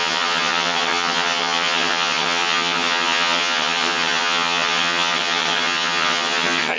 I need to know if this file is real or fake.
fake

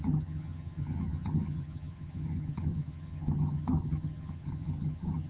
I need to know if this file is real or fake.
fake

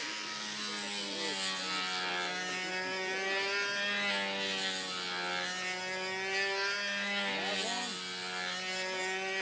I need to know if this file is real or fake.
real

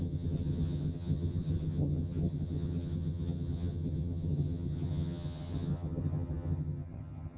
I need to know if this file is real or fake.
fake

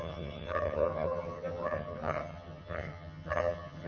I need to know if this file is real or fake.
fake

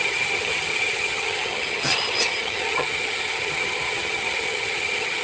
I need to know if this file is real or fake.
fake